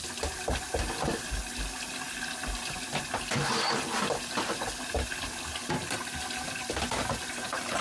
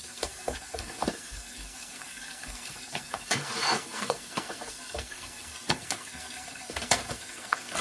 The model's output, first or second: second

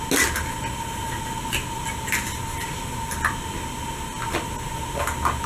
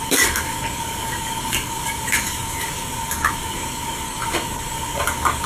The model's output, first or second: second